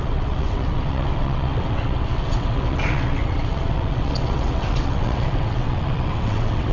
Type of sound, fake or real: fake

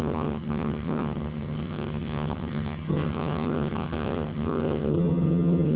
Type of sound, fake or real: fake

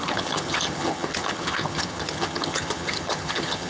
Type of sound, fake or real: fake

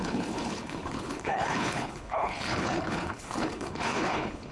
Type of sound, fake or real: fake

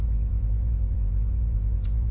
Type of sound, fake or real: fake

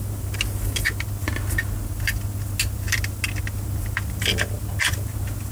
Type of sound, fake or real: real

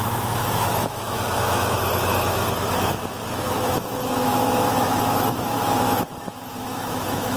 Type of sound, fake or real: fake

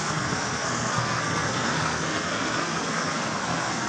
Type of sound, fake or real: fake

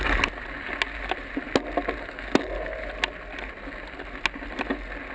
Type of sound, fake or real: real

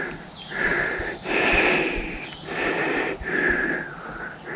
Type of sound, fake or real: real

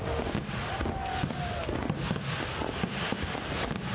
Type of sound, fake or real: real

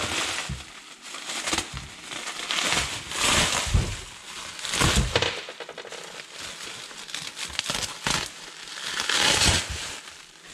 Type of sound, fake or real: real